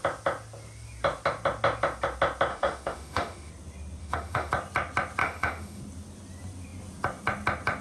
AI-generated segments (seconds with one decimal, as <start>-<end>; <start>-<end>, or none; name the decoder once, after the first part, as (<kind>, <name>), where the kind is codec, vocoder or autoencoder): 2.5-3.5 (autoencoder, DAC-VAE); 4.0-4.5; 5.2-5.8